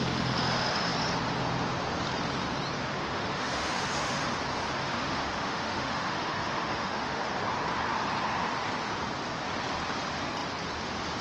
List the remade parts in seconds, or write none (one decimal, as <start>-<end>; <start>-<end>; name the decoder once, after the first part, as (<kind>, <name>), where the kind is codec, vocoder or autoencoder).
2.8-4.2 (autoencoder, DAC-VAE); 4.8-7.2